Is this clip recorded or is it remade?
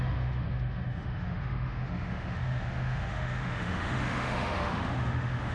remade